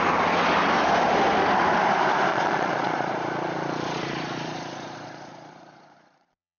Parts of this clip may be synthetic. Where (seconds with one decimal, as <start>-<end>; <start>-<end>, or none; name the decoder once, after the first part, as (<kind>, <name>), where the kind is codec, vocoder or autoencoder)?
2.3-6.6 (vocoder, Vocos)